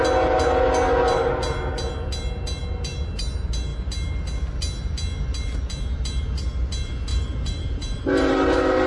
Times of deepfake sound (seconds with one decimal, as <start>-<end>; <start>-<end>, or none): 7.1-8.9